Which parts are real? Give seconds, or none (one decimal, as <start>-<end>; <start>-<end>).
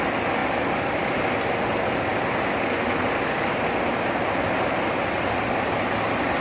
0.0-6.4